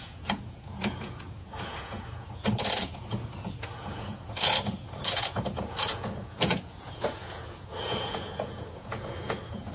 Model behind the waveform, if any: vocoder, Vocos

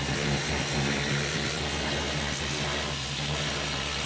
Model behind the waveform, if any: none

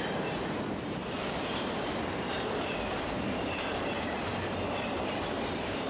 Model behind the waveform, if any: vocoder, BigVGAN v2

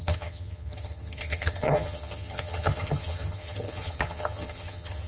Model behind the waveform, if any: vocoder, HiFi-GAN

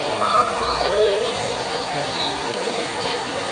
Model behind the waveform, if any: codec, SNAC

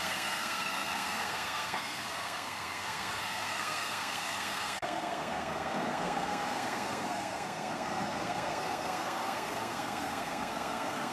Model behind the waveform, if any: codec, SNAC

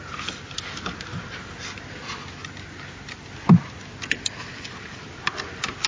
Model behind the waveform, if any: none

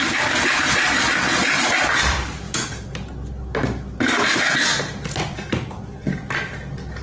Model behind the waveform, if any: none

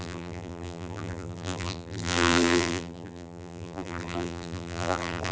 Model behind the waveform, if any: vocoder, BigVGAN v2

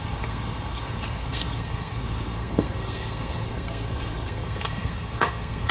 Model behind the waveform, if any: codec, SNAC